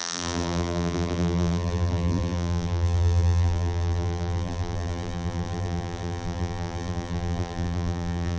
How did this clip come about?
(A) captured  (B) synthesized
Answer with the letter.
B